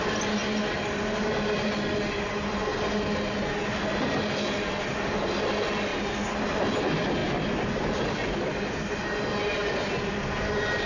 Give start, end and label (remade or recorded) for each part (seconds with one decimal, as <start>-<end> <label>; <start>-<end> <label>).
0.0-10.9 recorded